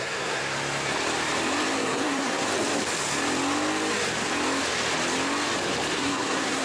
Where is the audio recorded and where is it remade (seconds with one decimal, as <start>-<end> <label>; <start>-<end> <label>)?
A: 0.0-0.4 remade; 0.4-1.8 recorded; 1.8-2.5 remade; 2.5-5.9 recorded; 5.9-6.6 remade